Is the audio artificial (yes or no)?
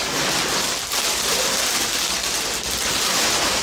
no